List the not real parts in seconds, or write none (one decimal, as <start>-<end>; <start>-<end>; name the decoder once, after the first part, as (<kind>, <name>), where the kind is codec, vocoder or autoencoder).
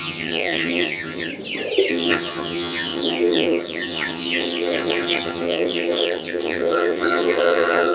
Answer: 0.0-1.3 (vocoder, HiFi-GAN); 1.9-7.9